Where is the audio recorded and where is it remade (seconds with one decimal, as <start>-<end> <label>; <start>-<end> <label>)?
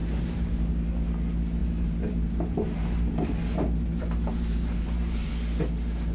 0.0-0.7 remade; 0.7-1.6 recorded; 1.6-5.3 remade; 5.3-6.1 recorded